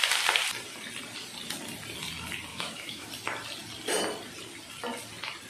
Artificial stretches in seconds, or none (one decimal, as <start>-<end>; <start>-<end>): 2.5-3.1